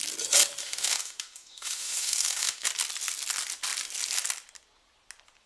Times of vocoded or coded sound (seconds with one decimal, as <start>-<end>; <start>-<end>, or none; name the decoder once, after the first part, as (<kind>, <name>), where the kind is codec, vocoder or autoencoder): 0.6-2.7 (autoencoder, DAC-VAE)